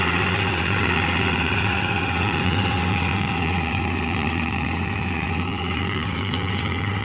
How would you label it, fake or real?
fake